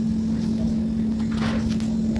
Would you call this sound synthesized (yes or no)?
no